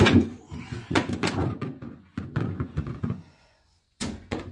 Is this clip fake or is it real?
fake